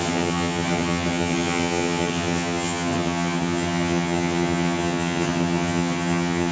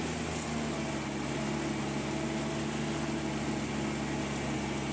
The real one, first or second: second